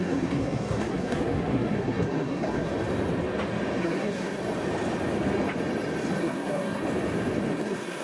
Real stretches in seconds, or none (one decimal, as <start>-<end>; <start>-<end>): 2.7-3.8; 4.4-6.2; 6.8-7.5